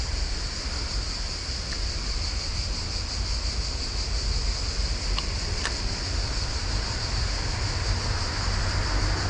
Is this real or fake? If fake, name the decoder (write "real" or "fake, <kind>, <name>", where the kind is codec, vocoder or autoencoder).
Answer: real